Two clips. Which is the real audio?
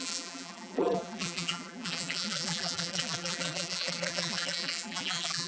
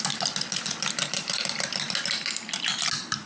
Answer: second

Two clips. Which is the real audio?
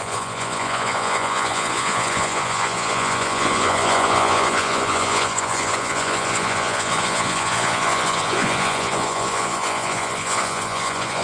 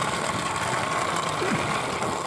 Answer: second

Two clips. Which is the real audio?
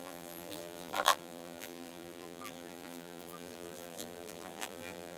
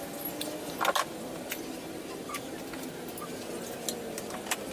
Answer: second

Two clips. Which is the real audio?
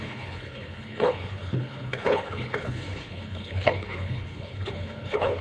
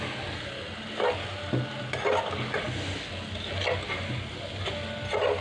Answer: second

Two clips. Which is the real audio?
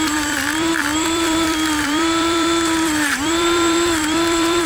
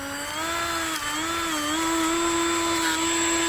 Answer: second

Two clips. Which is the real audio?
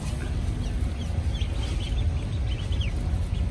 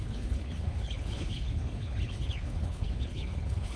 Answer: first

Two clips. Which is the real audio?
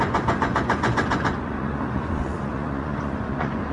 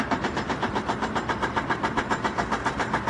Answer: second